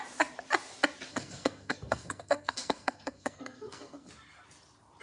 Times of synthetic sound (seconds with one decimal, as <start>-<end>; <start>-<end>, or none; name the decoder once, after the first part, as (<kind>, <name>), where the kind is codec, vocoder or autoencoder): 1.1-4.1 (codec, SNAC)